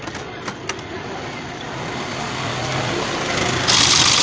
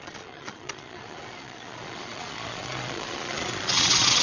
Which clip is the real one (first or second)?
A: first